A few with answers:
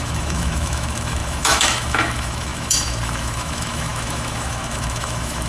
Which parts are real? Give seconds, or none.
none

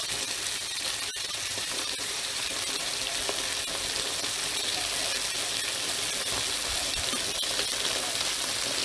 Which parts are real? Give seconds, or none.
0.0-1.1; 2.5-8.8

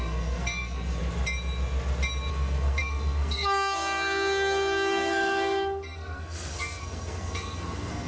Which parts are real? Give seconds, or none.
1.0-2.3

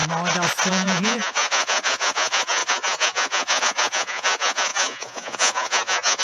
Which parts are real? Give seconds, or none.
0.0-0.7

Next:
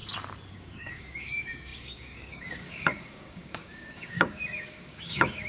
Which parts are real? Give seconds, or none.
0.0-0.5

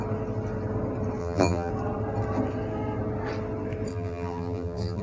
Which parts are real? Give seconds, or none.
0.0-1.2; 1.7-3.9